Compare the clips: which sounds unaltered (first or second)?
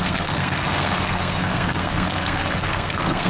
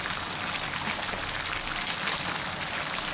second